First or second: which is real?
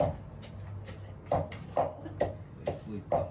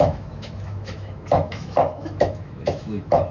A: first